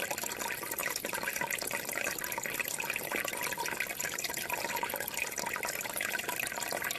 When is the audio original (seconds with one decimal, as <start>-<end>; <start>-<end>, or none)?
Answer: 0.0-7.0